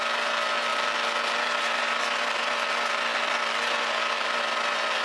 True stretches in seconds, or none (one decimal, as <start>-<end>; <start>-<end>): 0.0-5.0